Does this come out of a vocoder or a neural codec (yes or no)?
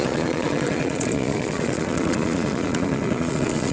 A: yes